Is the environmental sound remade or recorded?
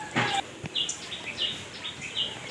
recorded